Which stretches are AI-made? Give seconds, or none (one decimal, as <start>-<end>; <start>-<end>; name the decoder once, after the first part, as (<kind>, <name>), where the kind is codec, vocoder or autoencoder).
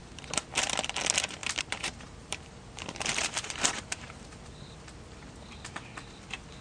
1.4-4.8 (vocoder, BigVGAN v2)